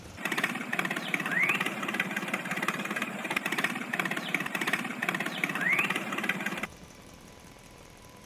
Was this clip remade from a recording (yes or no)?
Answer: yes